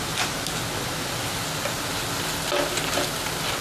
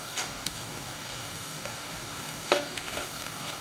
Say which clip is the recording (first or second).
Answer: first